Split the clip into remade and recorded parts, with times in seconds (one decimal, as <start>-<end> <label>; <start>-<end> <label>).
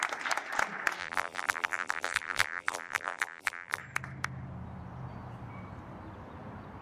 0.0-1.0 recorded; 1.0-3.8 remade; 3.8-6.8 recorded